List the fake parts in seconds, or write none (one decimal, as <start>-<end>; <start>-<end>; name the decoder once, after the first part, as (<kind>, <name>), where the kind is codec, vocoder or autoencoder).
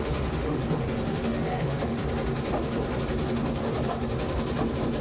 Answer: 0.0-0.6 (autoencoder, DAC-VAE); 1.1-2.0